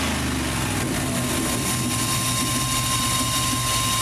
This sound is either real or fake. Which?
real